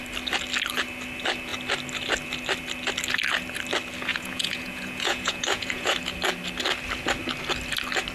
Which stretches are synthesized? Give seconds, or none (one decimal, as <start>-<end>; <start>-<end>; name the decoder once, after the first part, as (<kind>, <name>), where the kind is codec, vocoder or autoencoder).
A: 4.1-5.9 (vocoder, Vocos)